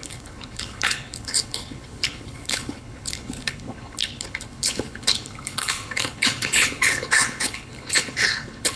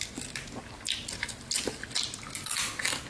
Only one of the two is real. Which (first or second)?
second